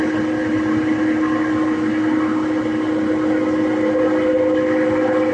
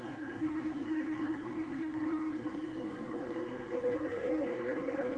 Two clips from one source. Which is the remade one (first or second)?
second